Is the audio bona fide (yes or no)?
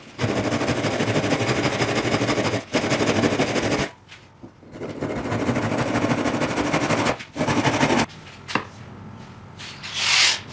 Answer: yes